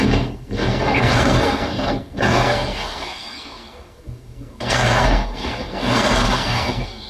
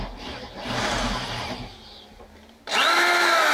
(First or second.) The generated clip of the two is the first